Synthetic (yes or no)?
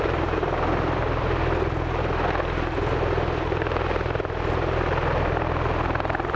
yes